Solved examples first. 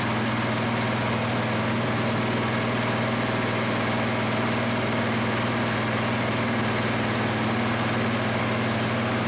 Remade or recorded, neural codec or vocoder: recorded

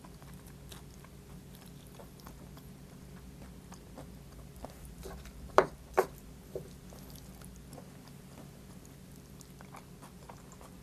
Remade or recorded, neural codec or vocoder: remade, vocoder, BigVGAN v2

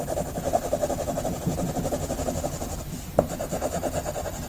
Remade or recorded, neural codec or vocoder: recorded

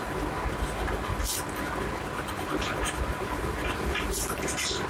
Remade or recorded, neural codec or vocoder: recorded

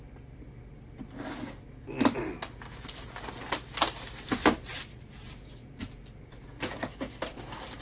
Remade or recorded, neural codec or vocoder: recorded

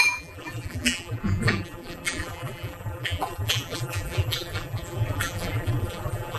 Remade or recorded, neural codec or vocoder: remade, vocoder, BigVGAN v2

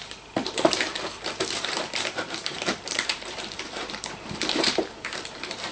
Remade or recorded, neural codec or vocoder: remade, vocoder, BigVGAN v2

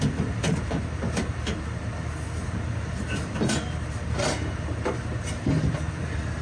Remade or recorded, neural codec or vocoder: remade, vocoder, BigVGAN v2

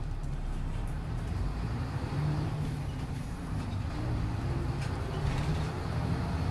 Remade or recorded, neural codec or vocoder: remade, vocoder, BigVGAN v2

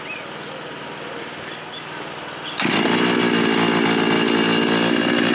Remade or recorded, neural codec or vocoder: recorded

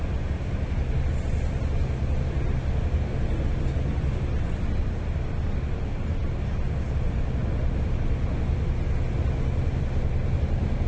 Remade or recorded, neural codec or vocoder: recorded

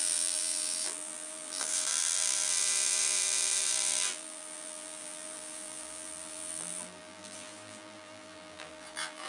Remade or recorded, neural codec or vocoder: remade, vocoder, BigVGAN v2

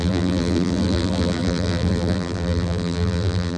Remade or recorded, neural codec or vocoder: remade, vocoder, BigVGAN v2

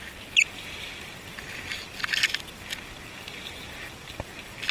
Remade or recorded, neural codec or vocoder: recorded